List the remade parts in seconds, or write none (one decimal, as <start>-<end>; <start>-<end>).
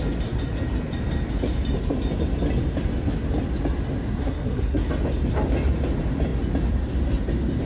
4.2-4.9